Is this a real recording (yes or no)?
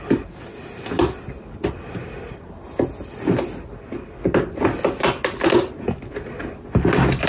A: yes